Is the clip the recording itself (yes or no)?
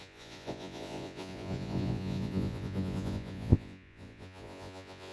no